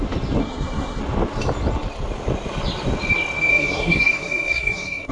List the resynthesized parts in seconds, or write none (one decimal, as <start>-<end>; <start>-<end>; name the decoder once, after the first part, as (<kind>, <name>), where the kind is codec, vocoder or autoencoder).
0.4-1.0 (codec, SNAC); 3.5-5.1